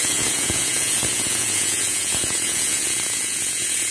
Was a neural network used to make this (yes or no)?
yes